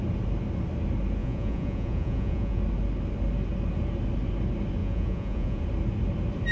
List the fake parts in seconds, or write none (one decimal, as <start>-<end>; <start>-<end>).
1.2-2.6; 4.8-5.6